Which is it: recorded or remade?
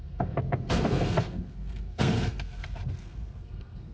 remade